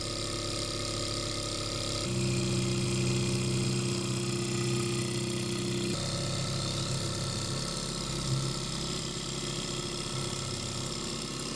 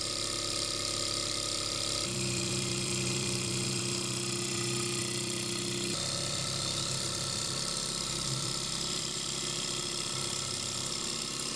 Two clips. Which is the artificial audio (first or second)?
second